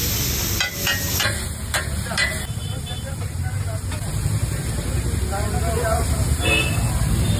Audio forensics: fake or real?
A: real